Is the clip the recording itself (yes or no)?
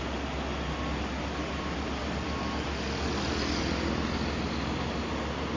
yes